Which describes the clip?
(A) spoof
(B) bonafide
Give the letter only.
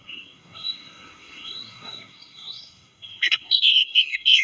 A